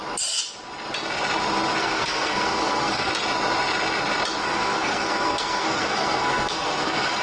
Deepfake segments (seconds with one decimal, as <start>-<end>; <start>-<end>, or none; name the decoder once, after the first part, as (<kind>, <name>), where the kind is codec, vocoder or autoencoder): 1.8-3.1 (codec, SNAC); 4.4-7.2